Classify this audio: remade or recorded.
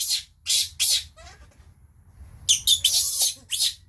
recorded